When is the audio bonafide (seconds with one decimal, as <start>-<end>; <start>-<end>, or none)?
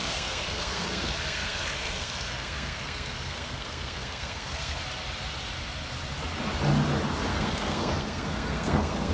4.8-7.3